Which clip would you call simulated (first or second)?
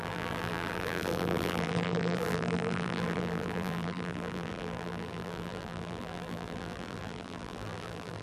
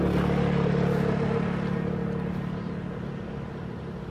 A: first